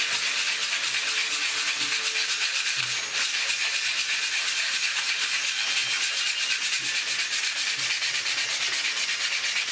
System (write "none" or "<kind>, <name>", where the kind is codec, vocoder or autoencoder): none